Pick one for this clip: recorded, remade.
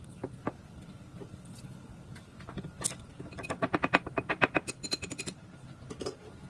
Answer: recorded